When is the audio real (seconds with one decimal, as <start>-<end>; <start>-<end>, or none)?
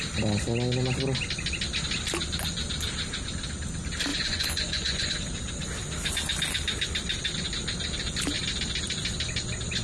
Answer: 0.0-4.1; 5.1-9.8